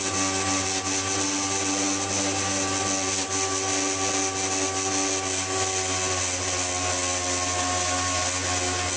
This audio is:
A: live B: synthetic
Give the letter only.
A